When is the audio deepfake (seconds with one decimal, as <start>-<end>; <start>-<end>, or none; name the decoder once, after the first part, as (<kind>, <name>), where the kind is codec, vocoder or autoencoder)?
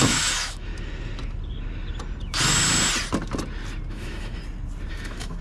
0.0-0.7 (autoencoder, DAC-VAE); 3.9-4.4; 4.9-5.4